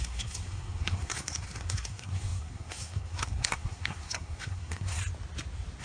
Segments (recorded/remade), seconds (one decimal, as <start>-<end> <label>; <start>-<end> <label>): 0.0-5.0 remade; 5.0-5.8 recorded